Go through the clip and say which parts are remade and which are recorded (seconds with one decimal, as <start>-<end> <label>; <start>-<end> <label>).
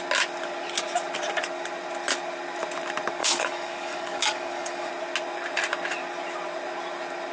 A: 0.0-3.2 recorded; 3.2-4.9 remade; 4.9-7.3 recorded